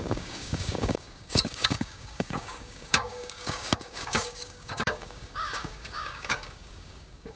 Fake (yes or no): yes